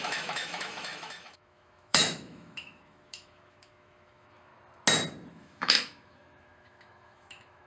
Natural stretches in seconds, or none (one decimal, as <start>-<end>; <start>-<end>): 4.5-5.3